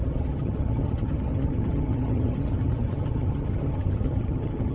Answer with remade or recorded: remade